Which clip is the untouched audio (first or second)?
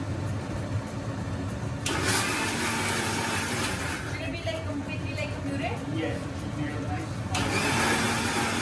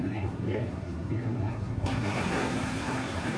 first